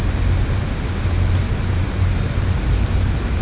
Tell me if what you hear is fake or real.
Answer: real